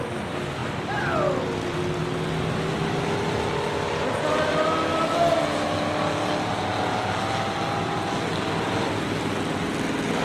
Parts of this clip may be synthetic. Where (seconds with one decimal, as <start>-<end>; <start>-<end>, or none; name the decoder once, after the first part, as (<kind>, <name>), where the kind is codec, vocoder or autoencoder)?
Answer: none